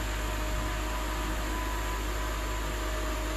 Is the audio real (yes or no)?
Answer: yes